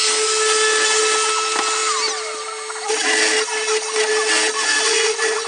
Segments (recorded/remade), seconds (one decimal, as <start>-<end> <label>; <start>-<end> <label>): 0.0-4.6 recorded; 4.6-5.5 remade